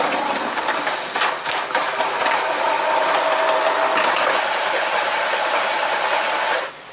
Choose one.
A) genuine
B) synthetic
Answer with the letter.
A